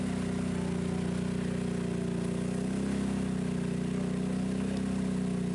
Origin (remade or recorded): recorded